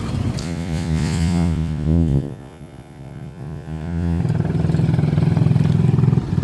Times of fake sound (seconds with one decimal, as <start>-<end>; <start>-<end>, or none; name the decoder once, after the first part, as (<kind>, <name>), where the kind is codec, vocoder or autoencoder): 0.4-4.2 (vocoder, Vocos)